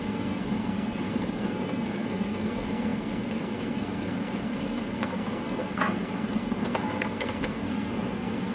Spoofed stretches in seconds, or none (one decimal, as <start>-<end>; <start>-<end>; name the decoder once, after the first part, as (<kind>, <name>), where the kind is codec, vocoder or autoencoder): 0.0-8.5 (codec, SNAC)